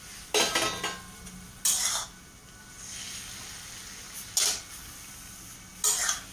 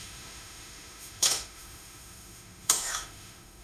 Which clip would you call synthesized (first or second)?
second